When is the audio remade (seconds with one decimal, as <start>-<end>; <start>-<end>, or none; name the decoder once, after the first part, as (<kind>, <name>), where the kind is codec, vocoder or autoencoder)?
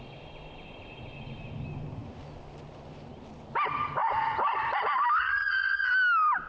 5.2-5.9 (vocoder, HiFi-GAN)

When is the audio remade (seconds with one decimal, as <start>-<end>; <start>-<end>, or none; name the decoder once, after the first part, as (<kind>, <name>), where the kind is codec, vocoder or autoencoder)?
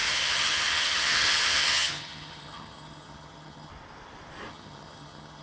0.0-3.7 (vocoder, HiFi-GAN); 4.5-5.4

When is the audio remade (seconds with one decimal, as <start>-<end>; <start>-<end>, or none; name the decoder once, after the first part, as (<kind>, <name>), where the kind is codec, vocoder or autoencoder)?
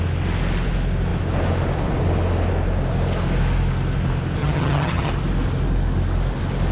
4.4-5.1 (vocoder, HiFi-GAN)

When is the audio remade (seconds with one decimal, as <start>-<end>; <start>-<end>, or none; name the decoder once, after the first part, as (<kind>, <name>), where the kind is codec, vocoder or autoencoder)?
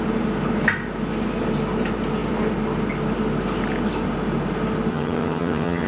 4.9-5.9 (vocoder, HiFi-GAN)